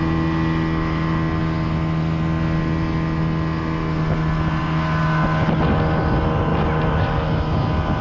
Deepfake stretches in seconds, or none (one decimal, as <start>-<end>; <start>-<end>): 6.5-7.6